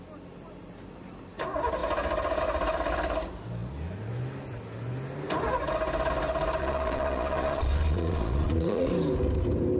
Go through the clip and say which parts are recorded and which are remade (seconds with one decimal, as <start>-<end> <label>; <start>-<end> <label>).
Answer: 0.0-6.6 recorded; 6.6-8.9 remade; 8.9-9.8 recorded